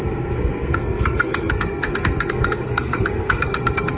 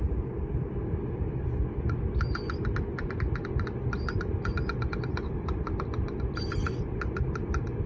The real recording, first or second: second